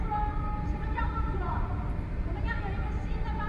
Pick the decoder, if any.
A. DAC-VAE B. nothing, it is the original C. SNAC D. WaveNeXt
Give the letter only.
B